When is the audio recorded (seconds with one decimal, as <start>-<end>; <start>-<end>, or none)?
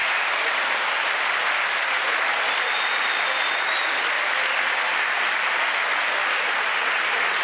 1.0-2.3; 4.9-6.2